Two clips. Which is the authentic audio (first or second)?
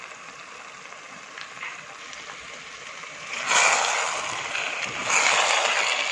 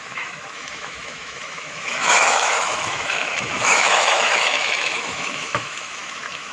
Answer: first